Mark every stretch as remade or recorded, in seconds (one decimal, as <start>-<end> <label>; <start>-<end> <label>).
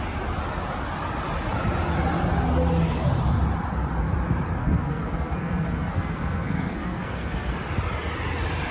0.0-4.6 recorded; 4.6-7.5 remade; 7.5-8.7 recorded